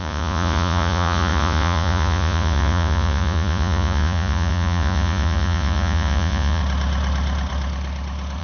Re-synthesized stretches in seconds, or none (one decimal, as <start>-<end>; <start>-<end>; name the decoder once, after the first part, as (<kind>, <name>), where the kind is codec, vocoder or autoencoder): 0.0-6.6 (vocoder, Vocos)